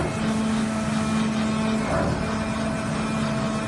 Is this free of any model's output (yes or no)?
yes